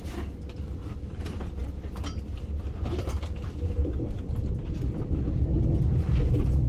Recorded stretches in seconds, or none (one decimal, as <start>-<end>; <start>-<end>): 0.0-6.7